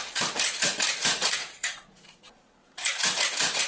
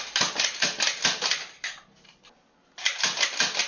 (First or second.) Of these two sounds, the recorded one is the second